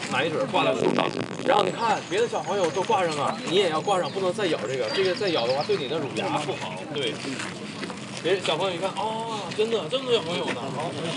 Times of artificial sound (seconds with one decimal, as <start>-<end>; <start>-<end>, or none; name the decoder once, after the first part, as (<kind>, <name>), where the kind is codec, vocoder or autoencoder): 0.8-1.7 (vocoder, BigVGAN v2)